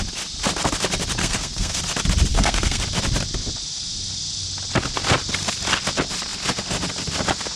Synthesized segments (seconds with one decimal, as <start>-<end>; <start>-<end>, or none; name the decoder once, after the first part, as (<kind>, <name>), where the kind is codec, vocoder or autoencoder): 1.2-1.8 (codec, SNAC); 2.3-2.8